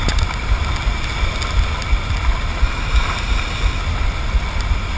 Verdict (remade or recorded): recorded